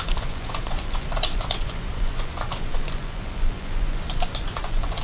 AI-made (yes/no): yes